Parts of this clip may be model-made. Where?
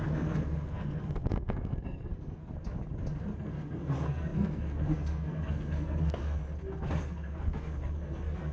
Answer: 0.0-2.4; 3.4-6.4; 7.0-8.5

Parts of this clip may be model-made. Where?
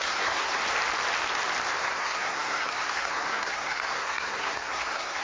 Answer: 0.0-0.6; 1.8-5.2